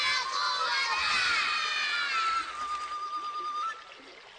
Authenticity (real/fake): real